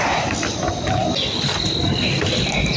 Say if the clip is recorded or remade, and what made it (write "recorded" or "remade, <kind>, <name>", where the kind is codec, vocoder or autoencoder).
recorded